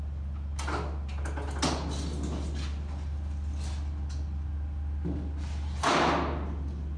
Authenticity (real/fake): real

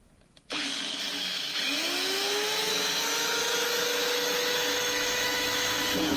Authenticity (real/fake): fake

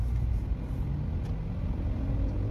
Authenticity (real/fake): real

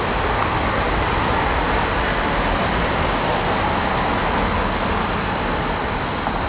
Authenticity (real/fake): real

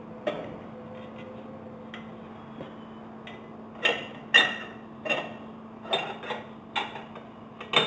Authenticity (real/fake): real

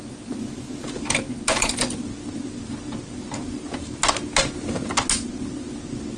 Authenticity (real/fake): real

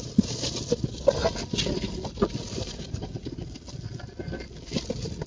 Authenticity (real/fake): real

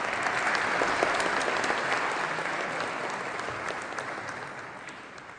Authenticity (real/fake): real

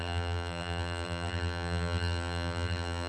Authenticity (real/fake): fake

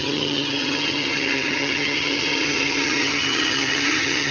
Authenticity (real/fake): fake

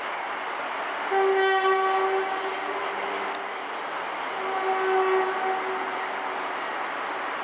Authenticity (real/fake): real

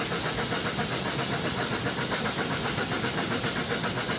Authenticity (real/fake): real